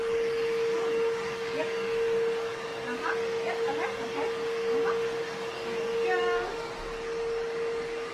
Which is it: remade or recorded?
remade